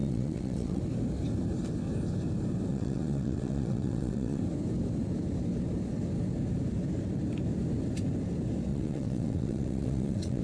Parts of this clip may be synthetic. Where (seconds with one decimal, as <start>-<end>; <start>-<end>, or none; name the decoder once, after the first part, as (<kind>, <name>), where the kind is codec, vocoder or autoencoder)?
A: 0.0-0.8 (vocoder, WaveNeXt); 2.7-4.4; 8.7-10.4